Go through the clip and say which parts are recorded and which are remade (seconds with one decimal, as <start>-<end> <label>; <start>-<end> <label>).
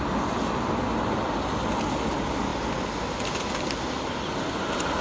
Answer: 0.0-5.0 recorded